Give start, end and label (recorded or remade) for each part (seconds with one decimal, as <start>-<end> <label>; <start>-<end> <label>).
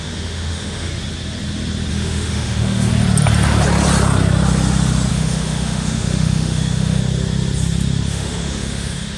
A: 0.0-0.9 remade; 0.9-1.9 recorded; 1.9-2.9 remade; 2.9-5.1 recorded; 5.1-7.0 remade; 7.0-8.1 recorded; 8.1-9.2 remade